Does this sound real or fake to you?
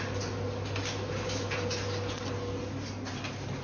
real